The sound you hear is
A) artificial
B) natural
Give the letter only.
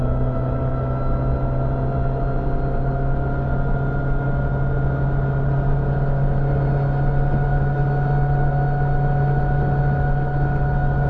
B